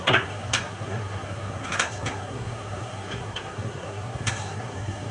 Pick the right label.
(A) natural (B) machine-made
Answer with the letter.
B